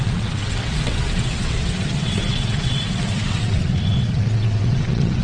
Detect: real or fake fake